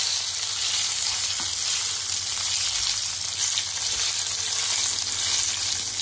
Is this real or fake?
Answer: real